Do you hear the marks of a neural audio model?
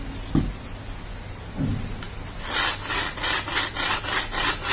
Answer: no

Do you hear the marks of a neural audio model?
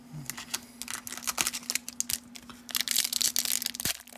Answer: no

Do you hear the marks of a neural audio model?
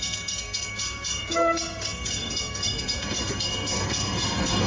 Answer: yes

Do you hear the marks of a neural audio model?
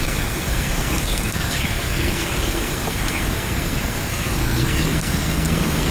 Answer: yes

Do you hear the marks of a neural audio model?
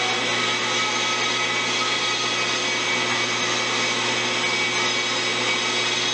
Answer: no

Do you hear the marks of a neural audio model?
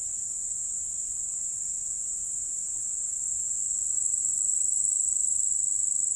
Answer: no